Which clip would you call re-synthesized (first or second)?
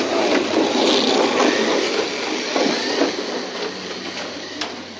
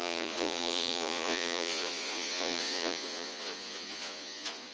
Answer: second